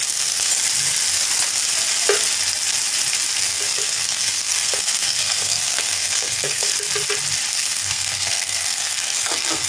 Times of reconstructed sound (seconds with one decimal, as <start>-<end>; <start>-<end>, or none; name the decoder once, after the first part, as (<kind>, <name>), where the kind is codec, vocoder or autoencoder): 0.0-0.5 (codec, SNAC); 3.4-6.7; 7.5-9.7